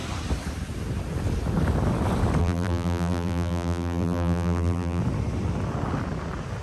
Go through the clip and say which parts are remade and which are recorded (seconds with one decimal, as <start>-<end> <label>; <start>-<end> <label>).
0.0-2.4 recorded; 2.4-5.0 remade; 5.0-6.6 recorded